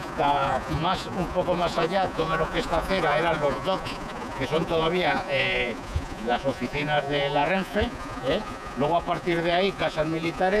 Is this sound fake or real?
fake